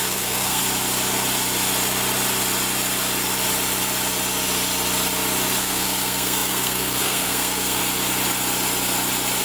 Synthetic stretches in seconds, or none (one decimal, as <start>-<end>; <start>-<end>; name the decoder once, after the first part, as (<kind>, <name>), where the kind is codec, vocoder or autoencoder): 0.0-0.6 (codec, SNAC); 5.6-7.8